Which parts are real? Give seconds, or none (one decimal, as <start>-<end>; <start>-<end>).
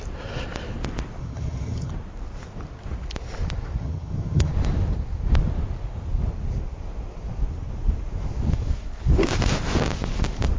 0.0-1.2; 1.9-3.8; 4.5-10.6